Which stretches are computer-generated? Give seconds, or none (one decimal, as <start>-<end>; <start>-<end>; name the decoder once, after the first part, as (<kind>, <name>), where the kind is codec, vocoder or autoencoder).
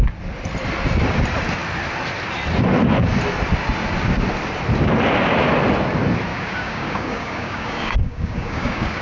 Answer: 6.3-9.0 (codec, DAC)